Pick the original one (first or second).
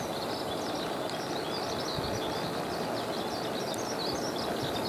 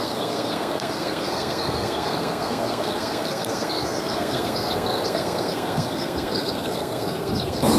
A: first